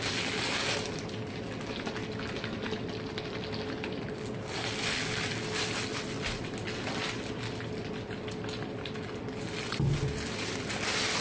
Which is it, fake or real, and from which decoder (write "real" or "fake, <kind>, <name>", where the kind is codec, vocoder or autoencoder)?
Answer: real